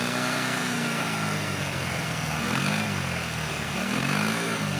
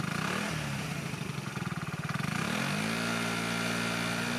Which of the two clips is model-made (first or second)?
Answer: first